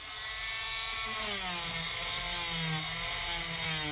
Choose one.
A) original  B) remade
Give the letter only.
A